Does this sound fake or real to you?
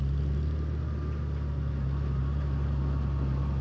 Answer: real